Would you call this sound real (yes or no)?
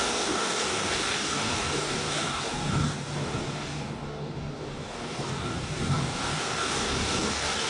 no